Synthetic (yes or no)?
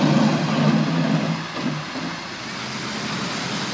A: no